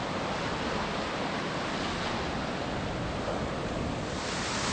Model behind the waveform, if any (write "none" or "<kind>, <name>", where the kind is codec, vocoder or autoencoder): none